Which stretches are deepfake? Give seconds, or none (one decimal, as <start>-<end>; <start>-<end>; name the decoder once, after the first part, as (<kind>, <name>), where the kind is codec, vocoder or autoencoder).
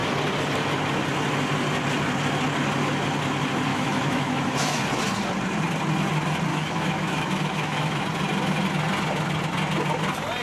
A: 3.7-4.8 (autoencoder, DAC-VAE); 6.5-8.0